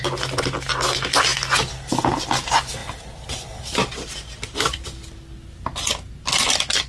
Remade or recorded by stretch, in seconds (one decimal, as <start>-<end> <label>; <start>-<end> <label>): 0.0-6.9 recorded